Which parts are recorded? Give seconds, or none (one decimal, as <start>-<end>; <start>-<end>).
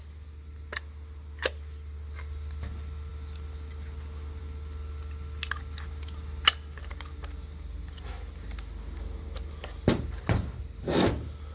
0.0-11.5